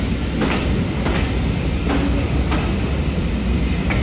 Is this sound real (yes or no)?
yes